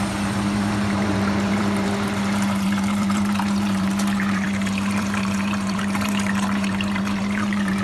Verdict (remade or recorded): remade